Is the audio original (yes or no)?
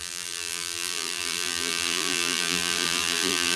no